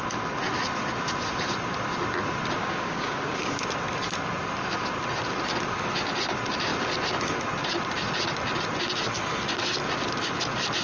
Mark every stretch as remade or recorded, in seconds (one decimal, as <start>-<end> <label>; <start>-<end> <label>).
0.0-2.6 recorded; 2.6-3.6 remade; 3.6-10.8 recorded